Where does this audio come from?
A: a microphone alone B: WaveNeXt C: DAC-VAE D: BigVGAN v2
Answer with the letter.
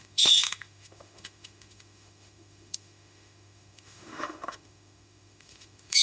C